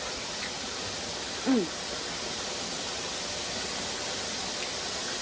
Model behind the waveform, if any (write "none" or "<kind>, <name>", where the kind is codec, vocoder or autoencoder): none